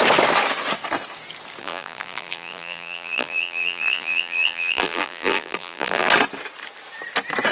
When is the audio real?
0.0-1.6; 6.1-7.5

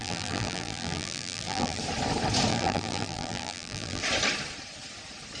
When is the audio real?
1.8-2.5; 4.0-5.4

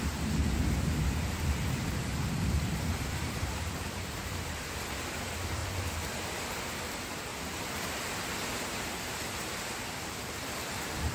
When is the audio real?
5.6-6.4

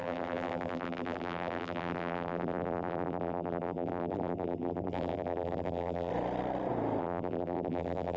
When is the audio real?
6.1-7.0

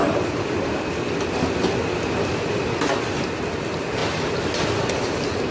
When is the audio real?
0.7-5.5

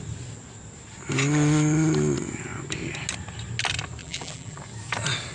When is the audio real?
0.0-4.0; 4.6-5.3